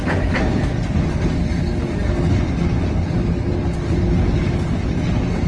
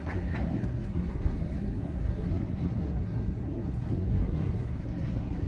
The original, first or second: first